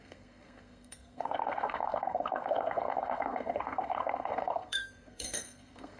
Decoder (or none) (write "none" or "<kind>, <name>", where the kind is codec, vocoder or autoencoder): codec, SNAC